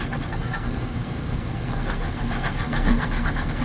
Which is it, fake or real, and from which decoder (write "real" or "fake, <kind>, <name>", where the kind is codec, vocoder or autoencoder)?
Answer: fake, codec, SNAC